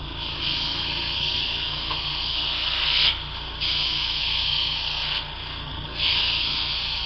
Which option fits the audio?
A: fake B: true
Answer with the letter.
A